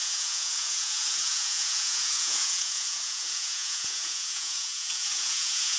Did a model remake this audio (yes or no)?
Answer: yes